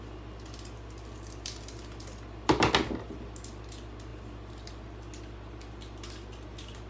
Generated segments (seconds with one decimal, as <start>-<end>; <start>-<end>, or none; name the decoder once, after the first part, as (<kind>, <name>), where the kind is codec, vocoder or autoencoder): none